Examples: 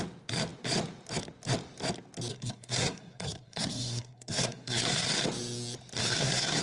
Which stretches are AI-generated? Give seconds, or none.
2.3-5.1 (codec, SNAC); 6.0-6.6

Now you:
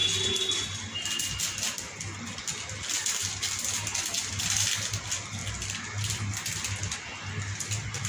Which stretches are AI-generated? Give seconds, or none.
none

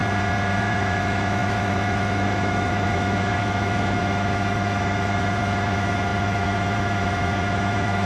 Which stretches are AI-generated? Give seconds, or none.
0.6-8.1 (autoencoder, DAC-VAE)